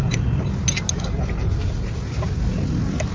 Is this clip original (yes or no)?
yes